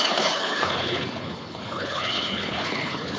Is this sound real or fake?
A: fake